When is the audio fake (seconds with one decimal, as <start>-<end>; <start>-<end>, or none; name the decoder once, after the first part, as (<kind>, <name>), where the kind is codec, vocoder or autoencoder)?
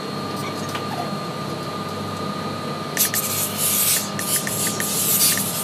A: none